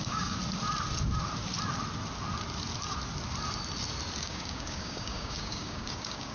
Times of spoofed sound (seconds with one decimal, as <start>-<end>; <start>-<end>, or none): 0.0-0.4; 4.2-6.3